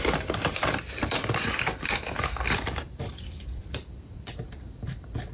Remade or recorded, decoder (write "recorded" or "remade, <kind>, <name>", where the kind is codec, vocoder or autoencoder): remade, vocoder, BigVGAN v2